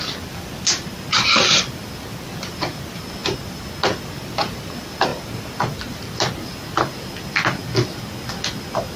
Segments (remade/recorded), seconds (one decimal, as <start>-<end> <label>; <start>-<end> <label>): 0.0-9.0 recorded